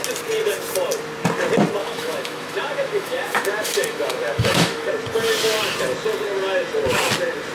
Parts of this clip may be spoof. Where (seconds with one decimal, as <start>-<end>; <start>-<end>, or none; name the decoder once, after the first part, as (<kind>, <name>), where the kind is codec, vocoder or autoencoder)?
1.8-4.9 (autoencoder, DAC-VAE)